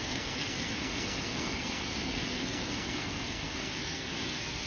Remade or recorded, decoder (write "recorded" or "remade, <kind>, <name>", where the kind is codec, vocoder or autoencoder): remade, codec, SNAC